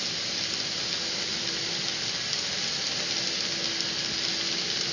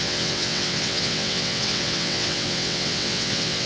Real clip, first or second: first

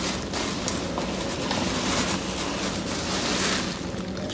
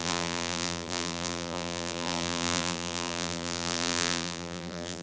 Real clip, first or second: first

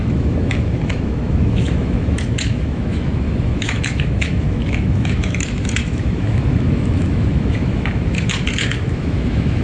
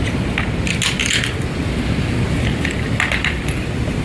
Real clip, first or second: second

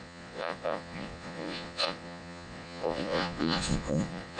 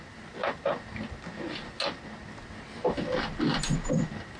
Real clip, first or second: second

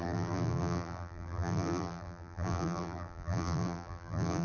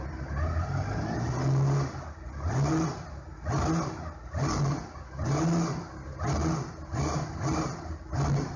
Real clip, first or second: second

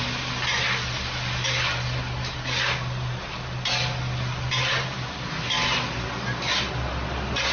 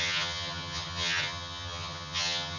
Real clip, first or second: first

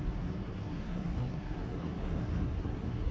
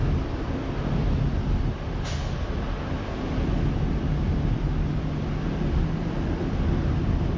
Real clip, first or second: second